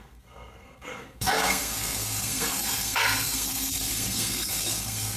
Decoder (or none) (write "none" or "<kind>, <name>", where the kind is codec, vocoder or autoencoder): codec, SNAC